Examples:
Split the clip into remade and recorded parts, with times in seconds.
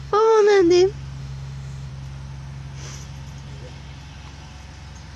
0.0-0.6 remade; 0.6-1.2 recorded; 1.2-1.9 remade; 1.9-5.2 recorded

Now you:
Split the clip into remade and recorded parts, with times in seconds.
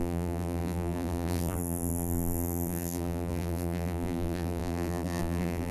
0.0-5.7 remade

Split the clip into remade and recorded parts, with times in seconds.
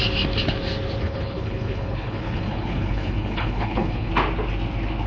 0.0-1.0 recorded; 1.0-4.1 remade; 4.1-5.1 recorded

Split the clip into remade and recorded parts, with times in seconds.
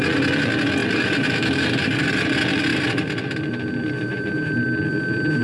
0.0-0.8 recorded; 0.8-2.3 remade; 2.3-2.7 recorded; 2.7-3.5 remade; 3.5-4.1 recorded; 4.1-4.6 remade; 4.6-5.4 recorded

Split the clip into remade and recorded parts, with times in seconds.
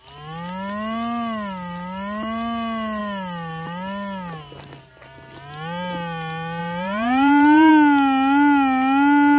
0.0-6.6 recorded; 6.6-7.7 remade; 7.7-9.4 recorded